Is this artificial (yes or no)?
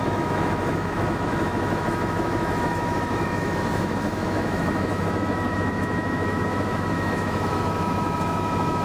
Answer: yes